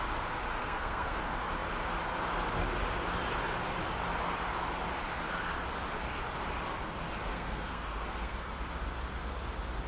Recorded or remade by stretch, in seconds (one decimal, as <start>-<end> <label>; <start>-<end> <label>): 0.0-0.6 recorded; 0.6-1.2 remade; 1.2-7.3 recorded; 7.3-8.5 remade; 8.5-9.9 recorded